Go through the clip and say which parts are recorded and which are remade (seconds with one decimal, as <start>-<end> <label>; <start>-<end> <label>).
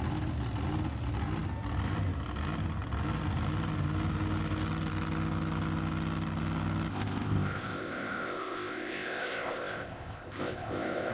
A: 0.0-6.9 recorded; 6.9-11.1 remade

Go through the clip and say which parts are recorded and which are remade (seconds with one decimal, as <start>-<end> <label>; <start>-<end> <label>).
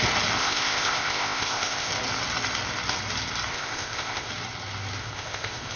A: 0.0-0.4 recorded; 0.4-1.9 remade; 1.9-3.5 recorded; 3.5-4.3 remade; 4.3-5.0 recorded; 5.0-5.8 remade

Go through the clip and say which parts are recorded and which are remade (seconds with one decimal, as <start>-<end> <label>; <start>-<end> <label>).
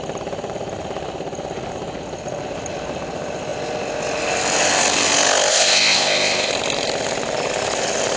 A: 0.0-5.5 recorded; 5.5-6.5 remade; 6.5-8.2 recorded